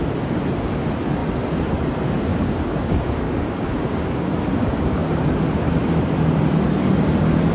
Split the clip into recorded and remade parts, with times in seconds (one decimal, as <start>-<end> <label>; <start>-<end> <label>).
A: 0.0-2.3 recorded; 2.3-5.3 remade; 5.3-7.5 recorded